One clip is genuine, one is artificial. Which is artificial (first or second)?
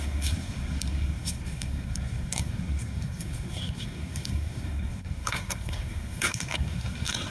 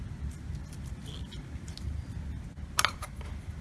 first